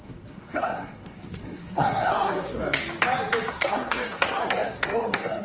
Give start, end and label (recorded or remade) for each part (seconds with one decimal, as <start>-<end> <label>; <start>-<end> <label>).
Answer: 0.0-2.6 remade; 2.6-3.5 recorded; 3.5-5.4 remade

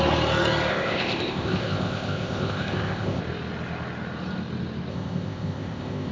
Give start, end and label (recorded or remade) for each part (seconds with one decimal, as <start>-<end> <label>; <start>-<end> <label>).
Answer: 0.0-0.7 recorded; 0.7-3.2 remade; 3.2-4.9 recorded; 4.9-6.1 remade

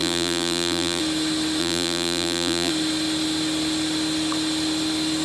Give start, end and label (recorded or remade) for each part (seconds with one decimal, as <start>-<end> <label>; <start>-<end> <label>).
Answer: 0.0-1.0 remade; 1.0-1.6 recorded; 1.6-2.7 remade; 2.7-5.2 recorded

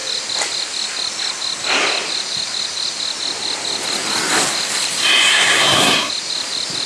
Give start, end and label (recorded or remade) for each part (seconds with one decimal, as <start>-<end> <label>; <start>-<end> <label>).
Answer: 0.0-5.3 recorded; 5.3-6.1 remade; 6.1-6.9 recorded